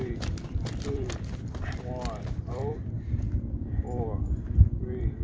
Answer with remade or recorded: remade